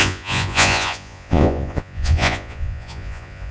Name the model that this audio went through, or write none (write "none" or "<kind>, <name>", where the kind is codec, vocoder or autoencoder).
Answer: vocoder, Vocos